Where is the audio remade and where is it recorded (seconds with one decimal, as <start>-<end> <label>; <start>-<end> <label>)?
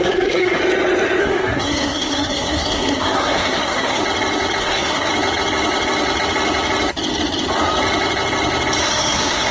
0.0-0.6 remade; 0.6-1.2 recorded; 1.2-4.0 remade; 4.0-4.6 recorded; 4.6-5.1 remade; 5.1-8.8 recorded; 8.8-9.5 remade